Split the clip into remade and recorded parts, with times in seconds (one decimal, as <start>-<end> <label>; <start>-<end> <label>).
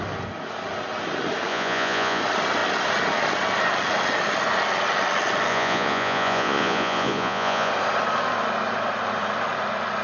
0.0-1.5 recorded; 1.5-2.2 remade; 2.2-5.5 recorded; 5.5-7.7 remade; 7.7-10.0 recorded